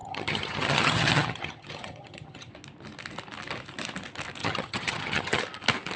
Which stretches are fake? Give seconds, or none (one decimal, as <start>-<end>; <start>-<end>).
0.0-2.5; 4.4-5.4